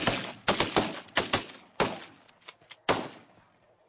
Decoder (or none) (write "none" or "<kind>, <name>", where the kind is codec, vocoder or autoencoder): none